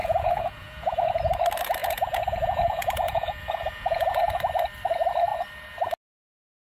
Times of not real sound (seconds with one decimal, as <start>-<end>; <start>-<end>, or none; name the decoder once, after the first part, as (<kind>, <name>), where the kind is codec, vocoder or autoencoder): 0.0-1.1 (vocoder, Vocos); 1.8-4.3